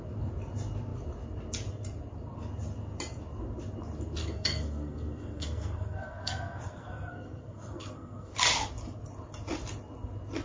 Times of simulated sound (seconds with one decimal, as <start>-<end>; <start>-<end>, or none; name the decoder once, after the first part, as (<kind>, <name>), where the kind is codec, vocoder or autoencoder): 4.2-8.3 (codec, SNAC)